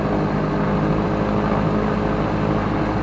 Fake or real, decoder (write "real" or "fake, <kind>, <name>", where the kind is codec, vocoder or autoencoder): real